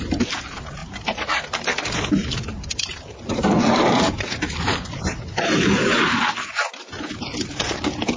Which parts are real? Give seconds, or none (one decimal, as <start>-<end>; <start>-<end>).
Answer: none

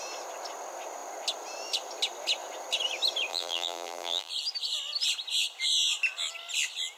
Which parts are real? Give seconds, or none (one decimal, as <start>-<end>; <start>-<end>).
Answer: 0.0-3.3; 4.3-7.0

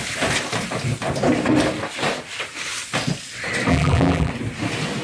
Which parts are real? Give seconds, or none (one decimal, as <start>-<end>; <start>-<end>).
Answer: 0.0-3.7; 4.3-5.0

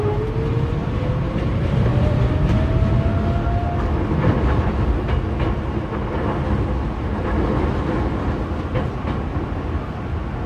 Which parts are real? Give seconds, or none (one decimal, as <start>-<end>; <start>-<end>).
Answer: 0.0-0.8; 2.2-10.5

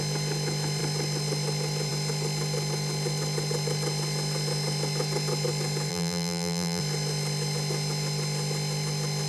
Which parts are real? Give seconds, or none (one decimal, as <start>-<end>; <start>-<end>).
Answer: 0.0-5.9; 6.8-9.3

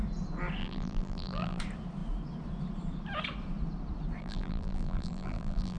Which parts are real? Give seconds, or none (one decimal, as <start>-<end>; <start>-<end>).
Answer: 0.0-0.6; 1.6-4.2

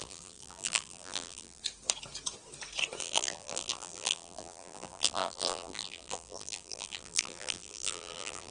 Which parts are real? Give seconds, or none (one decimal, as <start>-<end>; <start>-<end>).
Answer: 1.6-3.0